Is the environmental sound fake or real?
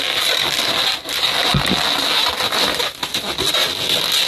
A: real